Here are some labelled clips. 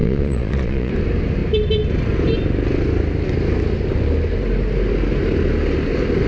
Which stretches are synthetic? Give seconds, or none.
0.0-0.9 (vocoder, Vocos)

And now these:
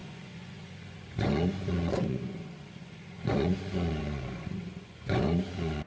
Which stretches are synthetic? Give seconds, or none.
0.0-5.9 (vocoder, Vocos)